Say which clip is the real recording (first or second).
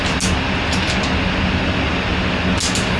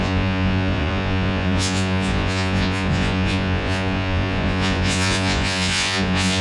first